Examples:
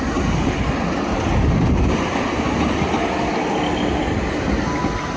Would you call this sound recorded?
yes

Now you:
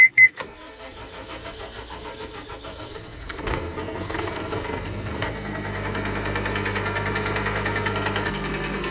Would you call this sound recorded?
no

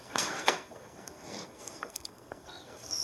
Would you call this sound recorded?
no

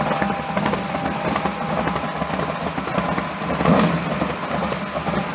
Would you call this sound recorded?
yes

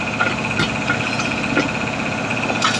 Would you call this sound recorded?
yes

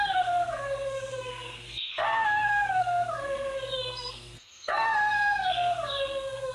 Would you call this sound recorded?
no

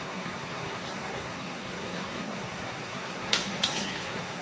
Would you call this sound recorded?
no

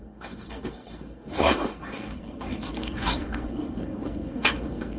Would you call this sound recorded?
no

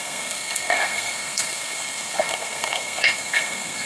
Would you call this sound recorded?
no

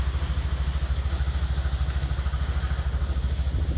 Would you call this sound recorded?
yes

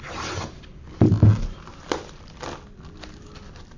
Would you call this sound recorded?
yes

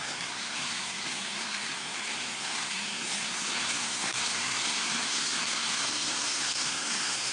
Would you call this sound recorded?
no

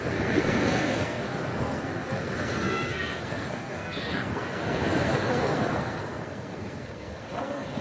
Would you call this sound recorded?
no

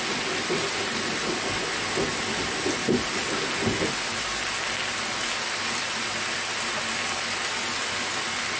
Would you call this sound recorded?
yes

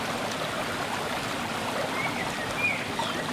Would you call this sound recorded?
yes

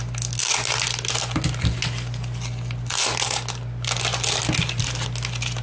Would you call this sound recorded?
yes